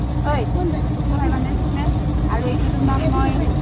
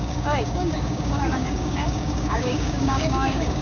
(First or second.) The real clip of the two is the first